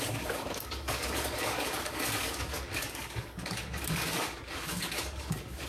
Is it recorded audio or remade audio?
remade